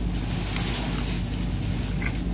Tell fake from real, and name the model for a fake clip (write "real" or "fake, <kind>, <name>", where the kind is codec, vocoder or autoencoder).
real